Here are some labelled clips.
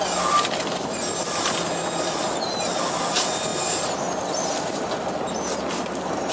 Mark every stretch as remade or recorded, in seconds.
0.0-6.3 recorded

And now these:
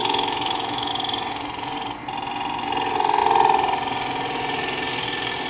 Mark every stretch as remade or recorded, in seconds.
0.0-0.9 remade; 0.9-5.5 recorded

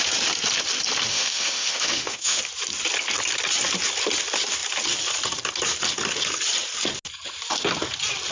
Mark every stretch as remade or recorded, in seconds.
0.0-1.1 recorded; 1.1-2.4 remade; 2.4-8.3 recorded

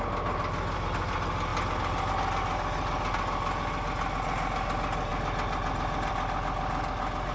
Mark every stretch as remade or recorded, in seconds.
0.0-7.3 recorded

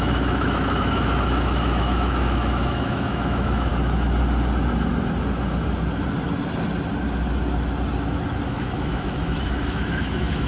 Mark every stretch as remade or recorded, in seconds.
0.0-3.7 remade; 3.7-8.5 recorded; 8.5-10.5 remade

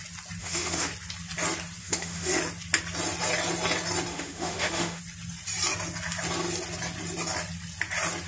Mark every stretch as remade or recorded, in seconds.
0.0-0.4 recorded; 0.4-0.9 remade; 0.9-1.8 recorded; 1.8-2.4 remade; 2.4-4.1 recorded; 4.1-5.0 remade; 5.0-8.3 recorded